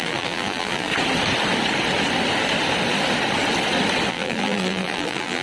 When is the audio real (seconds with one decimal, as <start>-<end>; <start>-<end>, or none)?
0.9-4.1